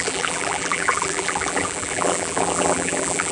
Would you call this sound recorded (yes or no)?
no